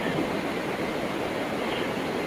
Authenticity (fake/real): real